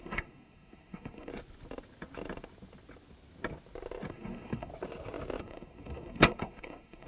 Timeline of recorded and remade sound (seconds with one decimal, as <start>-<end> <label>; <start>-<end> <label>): 0.0-1.3 remade; 1.3-4.1 recorded; 4.1-4.7 remade; 4.7-5.4 recorded; 5.4-7.1 remade